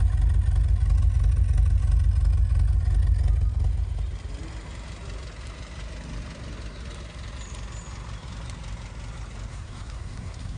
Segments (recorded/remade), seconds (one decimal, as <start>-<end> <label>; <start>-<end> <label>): 0.0-9.5 recorded; 9.5-10.6 remade